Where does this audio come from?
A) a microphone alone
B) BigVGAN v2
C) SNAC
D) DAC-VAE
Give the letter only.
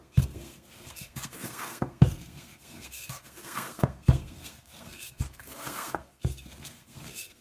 C